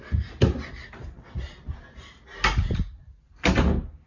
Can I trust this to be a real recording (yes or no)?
yes